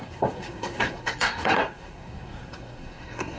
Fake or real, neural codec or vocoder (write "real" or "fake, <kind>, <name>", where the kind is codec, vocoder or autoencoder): fake, codec, SNAC